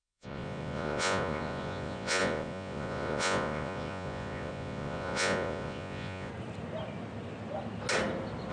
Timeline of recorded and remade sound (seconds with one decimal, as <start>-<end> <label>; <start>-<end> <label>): 0.0-6.3 remade; 6.3-8.5 recorded